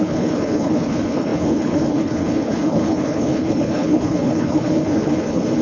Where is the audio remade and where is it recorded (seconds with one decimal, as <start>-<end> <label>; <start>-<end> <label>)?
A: 0.0-5.6 remade